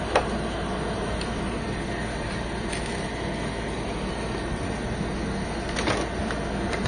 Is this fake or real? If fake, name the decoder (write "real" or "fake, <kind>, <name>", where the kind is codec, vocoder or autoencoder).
real